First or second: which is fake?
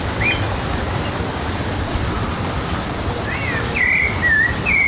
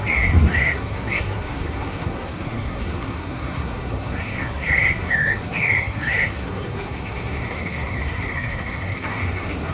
second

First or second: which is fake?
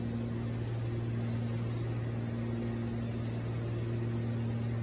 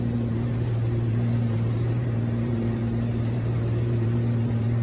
second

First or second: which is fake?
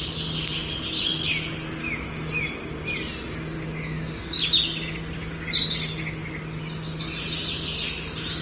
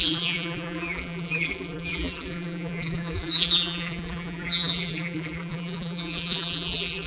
second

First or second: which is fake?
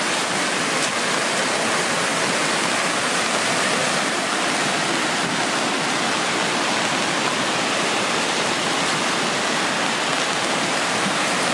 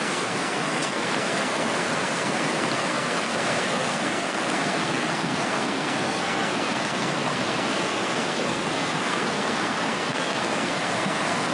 second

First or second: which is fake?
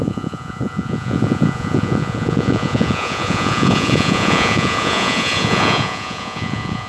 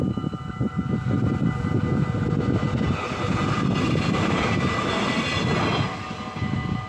first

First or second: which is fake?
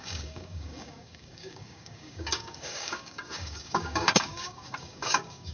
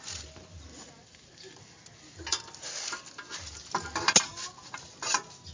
first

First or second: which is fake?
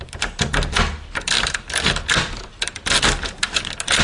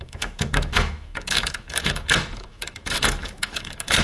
second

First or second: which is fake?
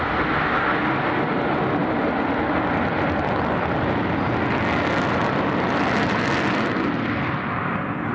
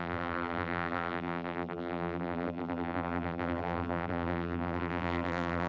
second